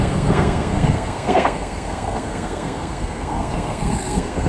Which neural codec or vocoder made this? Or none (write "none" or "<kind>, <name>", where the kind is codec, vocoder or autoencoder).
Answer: codec, SNAC